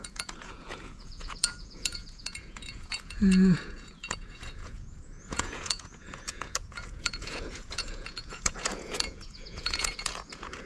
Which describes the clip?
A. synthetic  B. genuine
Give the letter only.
A